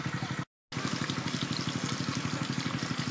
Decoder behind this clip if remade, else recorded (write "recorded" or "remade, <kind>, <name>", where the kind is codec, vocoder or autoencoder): recorded